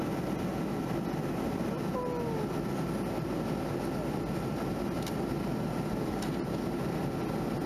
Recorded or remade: recorded